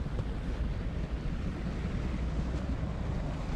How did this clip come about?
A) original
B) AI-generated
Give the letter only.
A